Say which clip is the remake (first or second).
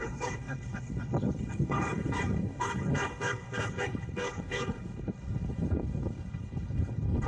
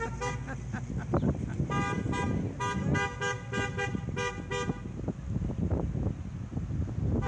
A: first